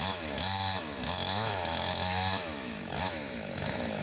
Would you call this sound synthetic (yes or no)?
yes